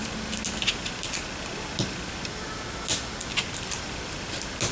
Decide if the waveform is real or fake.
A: real